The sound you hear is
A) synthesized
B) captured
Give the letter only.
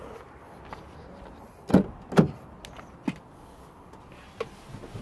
B